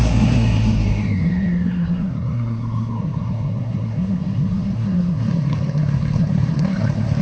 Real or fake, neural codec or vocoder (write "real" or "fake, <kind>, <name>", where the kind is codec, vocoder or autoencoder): fake, codec, SNAC